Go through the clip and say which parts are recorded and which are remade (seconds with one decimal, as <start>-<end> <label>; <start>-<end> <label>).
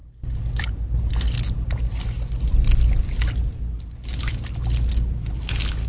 0.0-5.9 recorded